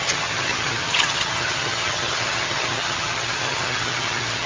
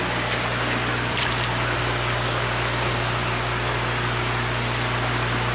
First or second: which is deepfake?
first